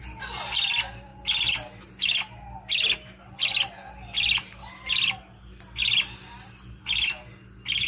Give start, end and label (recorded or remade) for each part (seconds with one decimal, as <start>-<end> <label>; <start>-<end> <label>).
0.0-7.9 recorded